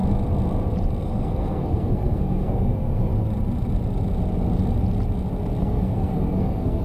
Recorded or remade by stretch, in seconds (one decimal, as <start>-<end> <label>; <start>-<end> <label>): 0.0-1.0 recorded; 1.0-3.1 remade; 3.1-5.6 recorded; 5.6-6.8 remade